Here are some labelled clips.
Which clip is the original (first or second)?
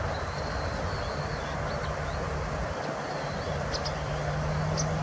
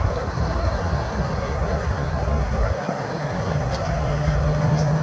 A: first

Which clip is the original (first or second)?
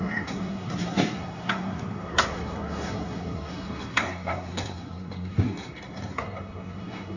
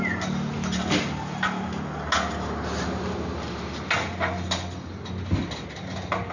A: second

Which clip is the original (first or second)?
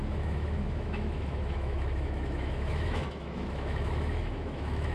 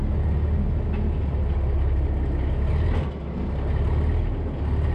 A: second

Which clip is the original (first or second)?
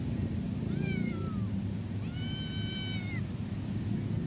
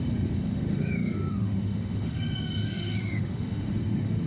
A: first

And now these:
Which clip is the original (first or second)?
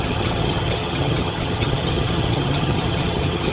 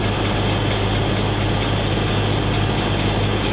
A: second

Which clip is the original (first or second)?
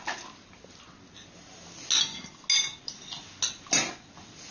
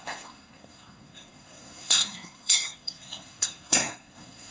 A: first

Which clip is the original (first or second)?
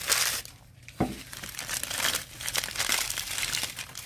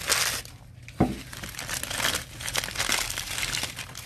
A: second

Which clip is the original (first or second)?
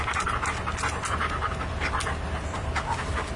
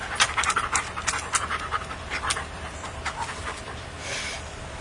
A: first